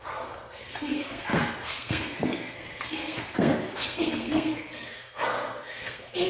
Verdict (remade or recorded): remade